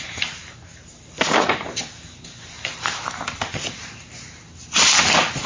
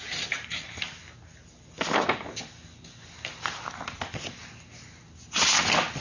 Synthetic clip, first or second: first